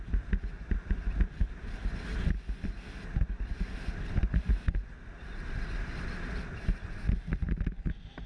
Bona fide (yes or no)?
yes